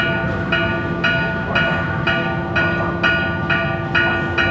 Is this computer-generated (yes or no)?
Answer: no